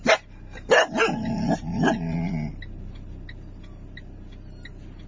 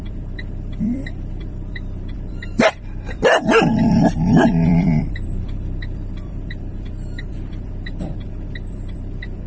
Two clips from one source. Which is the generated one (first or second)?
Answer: second